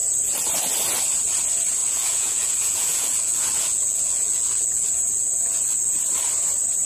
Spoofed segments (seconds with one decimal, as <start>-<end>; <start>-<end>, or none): 1.8-5.9